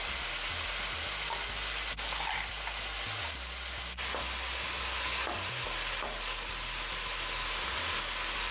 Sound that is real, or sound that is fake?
real